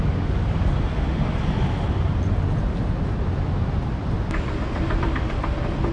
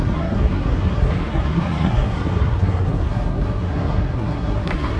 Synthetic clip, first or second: second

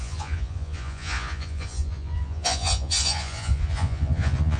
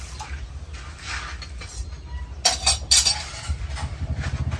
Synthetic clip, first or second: first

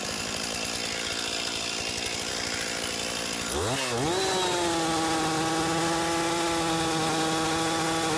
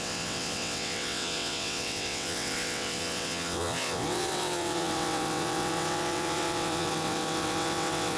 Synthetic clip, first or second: second